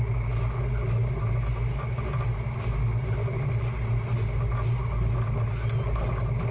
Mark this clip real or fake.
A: real